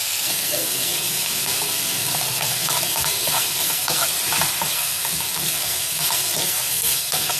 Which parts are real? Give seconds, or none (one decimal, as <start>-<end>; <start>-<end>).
4.1-4.7